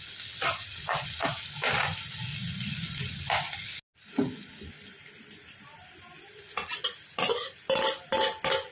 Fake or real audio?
real